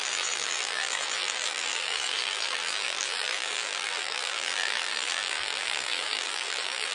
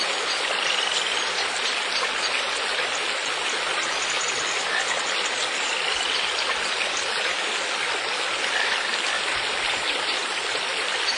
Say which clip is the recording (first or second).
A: second